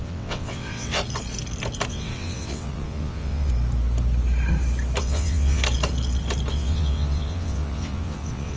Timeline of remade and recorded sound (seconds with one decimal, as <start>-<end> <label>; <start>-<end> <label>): 0.0-1.0 remade; 1.0-1.9 recorded; 1.9-3.5 remade; 3.5-5.0 recorded; 5.0-5.6 remade; 5.6-6.5 recorded; 6.5-8.6 remade